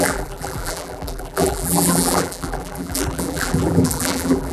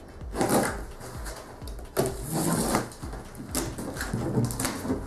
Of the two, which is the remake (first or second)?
first